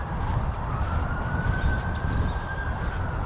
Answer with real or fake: fake